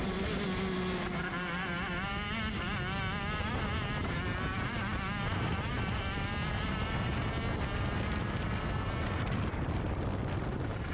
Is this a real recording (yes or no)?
yes